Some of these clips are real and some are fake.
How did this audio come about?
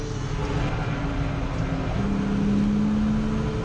real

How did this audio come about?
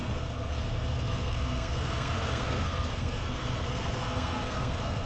fake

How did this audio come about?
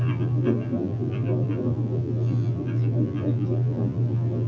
fake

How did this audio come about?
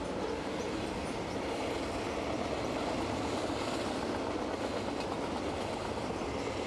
real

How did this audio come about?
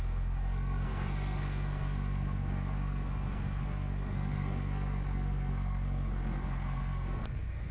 fake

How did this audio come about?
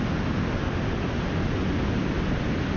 real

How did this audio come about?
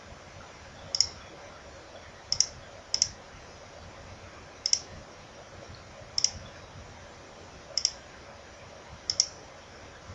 real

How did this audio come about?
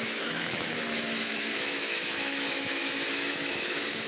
fake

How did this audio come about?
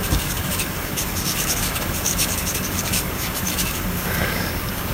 fake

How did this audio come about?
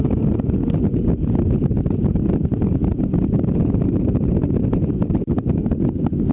real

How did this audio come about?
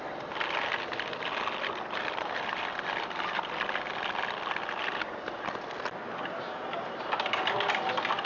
real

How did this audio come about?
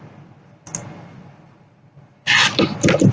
real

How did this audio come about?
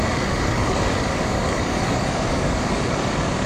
fake